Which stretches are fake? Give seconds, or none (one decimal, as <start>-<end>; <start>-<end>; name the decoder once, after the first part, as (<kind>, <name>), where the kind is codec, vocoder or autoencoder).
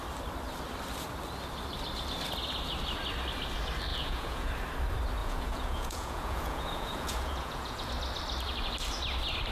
3.9-4.5 (vocoder, Vocos); 5.2-7.9